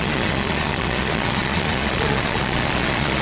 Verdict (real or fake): fake